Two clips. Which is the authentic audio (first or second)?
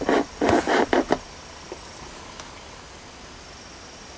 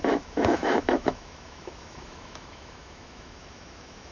first